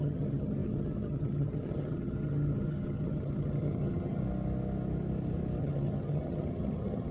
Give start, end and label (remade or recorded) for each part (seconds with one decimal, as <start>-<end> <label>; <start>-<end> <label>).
0.0-4.2 remade; 4.2-5.6 recorded; 5.6-7.1 remade